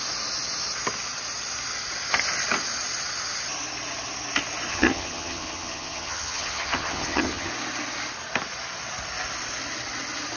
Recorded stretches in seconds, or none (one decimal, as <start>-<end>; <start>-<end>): 0.0-4.7; 7.5-10.4